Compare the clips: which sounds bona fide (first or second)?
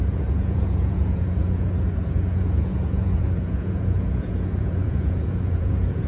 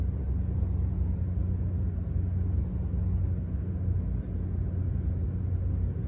second